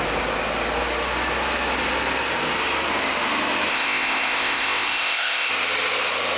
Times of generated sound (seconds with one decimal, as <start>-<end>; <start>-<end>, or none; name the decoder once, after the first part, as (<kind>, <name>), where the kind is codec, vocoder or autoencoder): 3.7-5.5 (codec, ZipCodec)